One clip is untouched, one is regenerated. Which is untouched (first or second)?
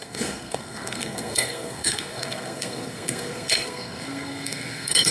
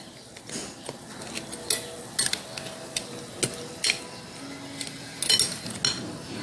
second